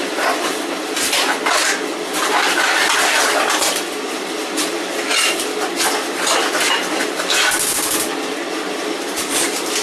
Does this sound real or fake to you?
real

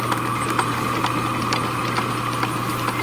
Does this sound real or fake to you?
real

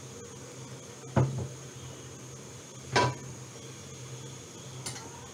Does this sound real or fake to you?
real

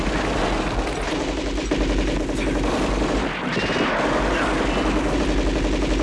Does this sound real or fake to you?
real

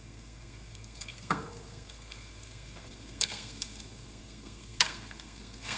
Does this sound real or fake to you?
fake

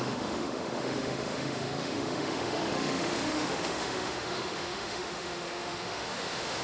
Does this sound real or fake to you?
fake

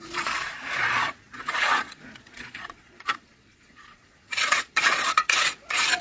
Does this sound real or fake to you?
fake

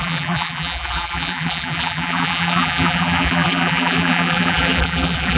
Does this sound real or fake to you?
fake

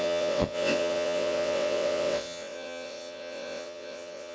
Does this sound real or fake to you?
fake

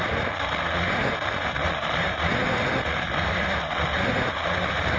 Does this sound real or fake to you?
real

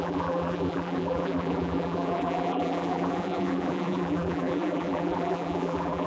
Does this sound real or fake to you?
fake